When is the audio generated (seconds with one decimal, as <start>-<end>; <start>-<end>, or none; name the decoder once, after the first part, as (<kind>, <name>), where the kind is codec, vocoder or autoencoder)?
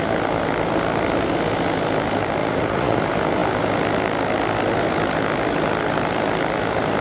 2.4-3.0 (vocoder, Vocos)